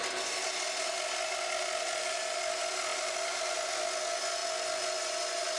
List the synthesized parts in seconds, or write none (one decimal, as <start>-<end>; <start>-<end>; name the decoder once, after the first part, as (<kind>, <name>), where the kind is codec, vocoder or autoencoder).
2.9-3.5 (vocoder, BigVGAN v2)